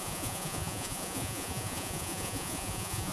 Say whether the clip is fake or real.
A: fake